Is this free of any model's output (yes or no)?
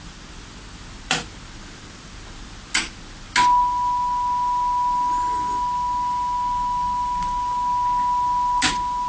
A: yes